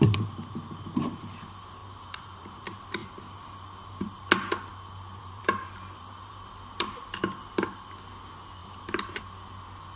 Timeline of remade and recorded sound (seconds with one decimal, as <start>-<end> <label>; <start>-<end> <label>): 0.0-1.8 recorded; 1.8-2.4 remade; 2.4-5.2 recorded; 5.2-7.0 remade; 7.0-8.6 recorded; 8.6-9.2 remade; 9.2-10.0 recorded